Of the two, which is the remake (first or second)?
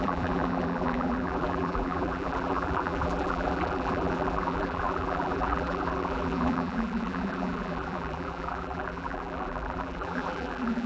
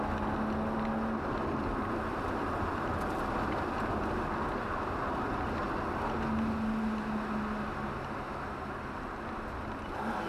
first